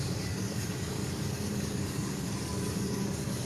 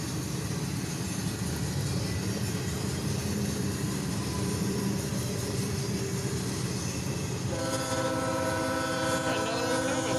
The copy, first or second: first